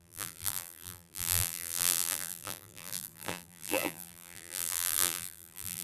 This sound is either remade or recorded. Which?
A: remade